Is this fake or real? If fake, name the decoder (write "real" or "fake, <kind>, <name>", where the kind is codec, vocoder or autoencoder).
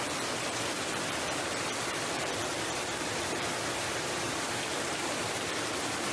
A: fake, vocoder, BigVGAN v2